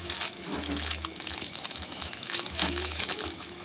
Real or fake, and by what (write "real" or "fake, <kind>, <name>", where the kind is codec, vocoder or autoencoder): fake, autoencoder, DAC-VAE